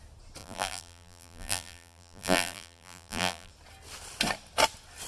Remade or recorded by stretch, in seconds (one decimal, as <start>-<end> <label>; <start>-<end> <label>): 0.0-0.4 recorded; 0.4-3.5 remade; 3.5-5.1 recorded